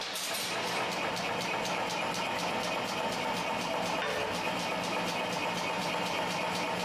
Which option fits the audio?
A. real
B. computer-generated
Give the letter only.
A